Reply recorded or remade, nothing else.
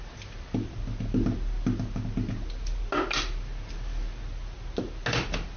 recorded